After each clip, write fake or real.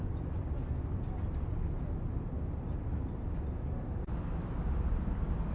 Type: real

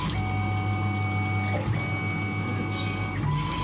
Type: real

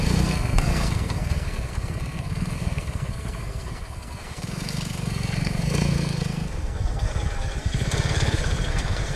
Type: fake